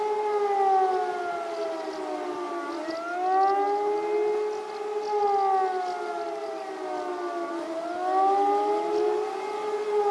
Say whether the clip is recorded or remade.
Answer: recorded